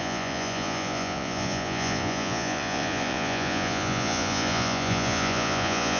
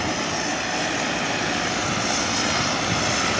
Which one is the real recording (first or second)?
second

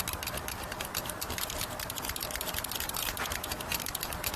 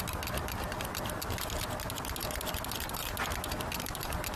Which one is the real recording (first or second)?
second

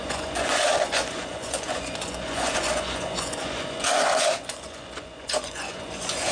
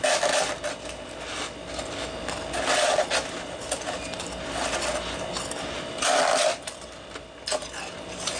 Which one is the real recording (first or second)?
second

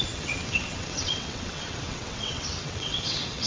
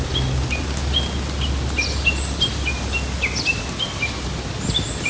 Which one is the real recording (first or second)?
second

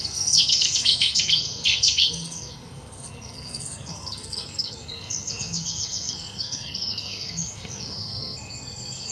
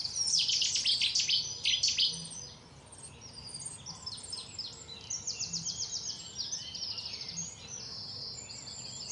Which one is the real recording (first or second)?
second